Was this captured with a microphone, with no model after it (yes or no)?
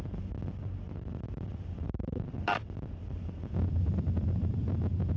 no